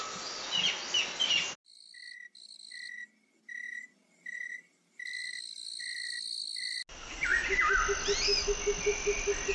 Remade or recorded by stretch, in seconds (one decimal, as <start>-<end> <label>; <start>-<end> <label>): 0.0-9.5 recorded